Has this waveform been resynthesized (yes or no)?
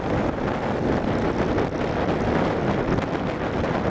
no